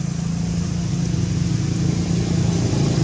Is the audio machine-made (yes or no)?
no